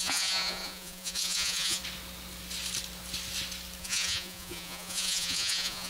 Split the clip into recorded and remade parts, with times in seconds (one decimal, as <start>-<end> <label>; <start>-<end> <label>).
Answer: 0.0-1.8 remade; 1.8-3.8 recorded; 3.8-5.9 remade